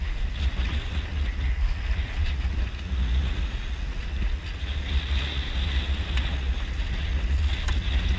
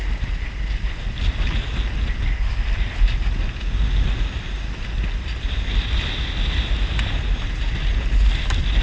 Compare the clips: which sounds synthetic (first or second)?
first